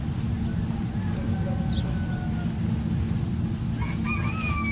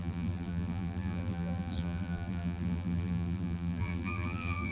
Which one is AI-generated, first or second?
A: second